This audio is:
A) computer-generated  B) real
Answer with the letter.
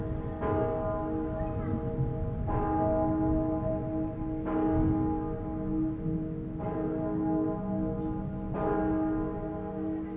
B